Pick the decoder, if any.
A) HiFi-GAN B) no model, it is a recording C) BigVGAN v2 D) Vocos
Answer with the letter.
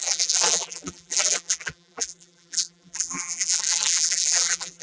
C